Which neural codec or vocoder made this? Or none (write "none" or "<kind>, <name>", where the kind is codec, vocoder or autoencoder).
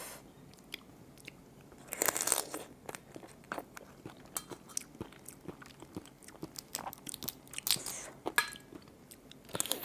none